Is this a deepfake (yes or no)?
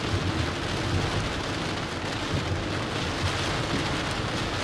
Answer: no